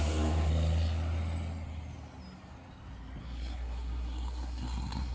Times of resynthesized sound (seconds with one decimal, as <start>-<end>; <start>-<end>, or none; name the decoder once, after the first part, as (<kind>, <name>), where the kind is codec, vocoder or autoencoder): 0.0-0.5 (codec, SNAC); 3.2-5.1

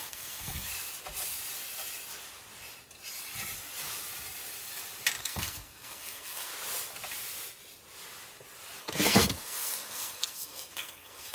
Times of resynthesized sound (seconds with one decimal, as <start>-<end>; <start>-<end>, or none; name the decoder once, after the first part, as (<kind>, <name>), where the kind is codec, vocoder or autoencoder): 0.0-0.7 (codec, SNAC); 5.2-6.5; 8.8-11.3

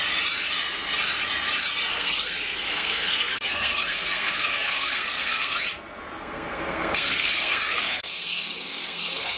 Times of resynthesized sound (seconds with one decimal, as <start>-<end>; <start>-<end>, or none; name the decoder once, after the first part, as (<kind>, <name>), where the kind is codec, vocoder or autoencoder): 1.9-5.6 (codec, SNAC); 6.0-9.4